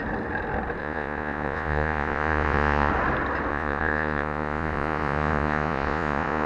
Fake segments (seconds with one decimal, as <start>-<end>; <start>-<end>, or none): 0.8-2.9; 3.5-6.5